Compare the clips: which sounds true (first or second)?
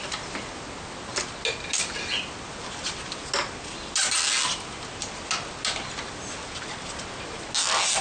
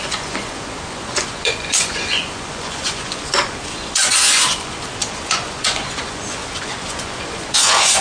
first